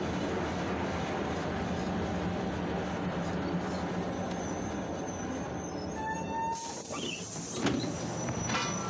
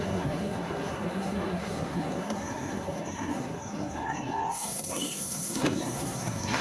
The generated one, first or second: second